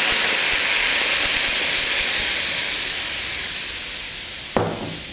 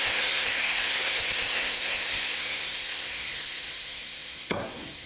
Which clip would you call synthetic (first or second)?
second